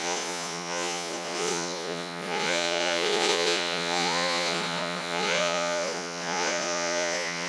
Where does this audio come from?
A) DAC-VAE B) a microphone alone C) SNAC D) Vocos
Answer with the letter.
D